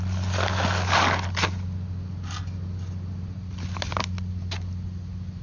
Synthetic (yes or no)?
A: no